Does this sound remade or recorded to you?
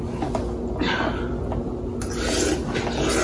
recorded